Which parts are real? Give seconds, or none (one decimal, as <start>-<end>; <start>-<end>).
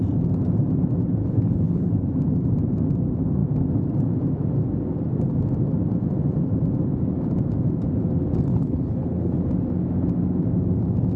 0.0-1.2; 2.1-8.5; 9.4-11.2